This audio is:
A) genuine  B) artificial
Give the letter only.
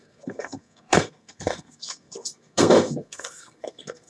B